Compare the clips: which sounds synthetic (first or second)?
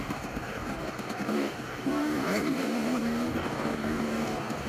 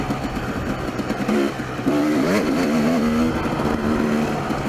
first